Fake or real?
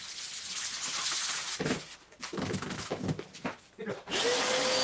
real